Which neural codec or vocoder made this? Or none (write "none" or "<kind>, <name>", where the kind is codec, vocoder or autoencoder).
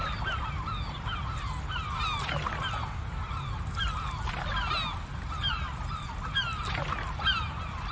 none